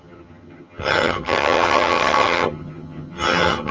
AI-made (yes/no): yes